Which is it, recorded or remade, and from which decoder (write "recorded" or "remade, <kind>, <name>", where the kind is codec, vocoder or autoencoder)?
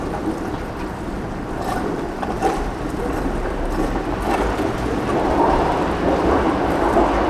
remade, vocoder, BigVGAN v2